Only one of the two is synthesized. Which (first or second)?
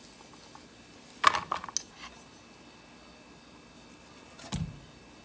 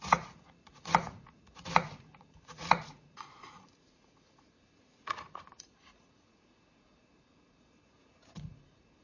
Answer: second